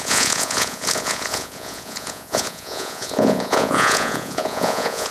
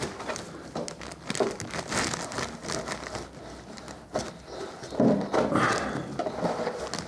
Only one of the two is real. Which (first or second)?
second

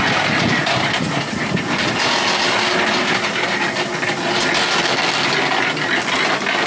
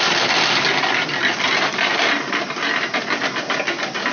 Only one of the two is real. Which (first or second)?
first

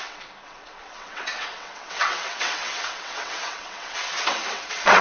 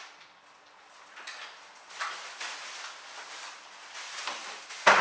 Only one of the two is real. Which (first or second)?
second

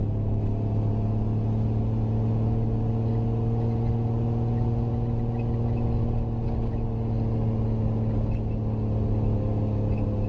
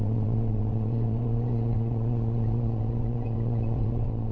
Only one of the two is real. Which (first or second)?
first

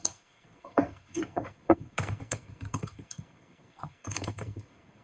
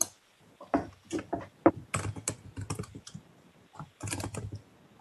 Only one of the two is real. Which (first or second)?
second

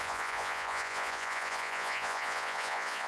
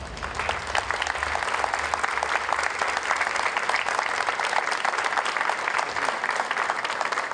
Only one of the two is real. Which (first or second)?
second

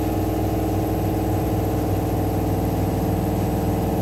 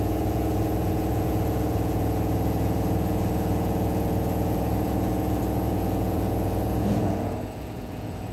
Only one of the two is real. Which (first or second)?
first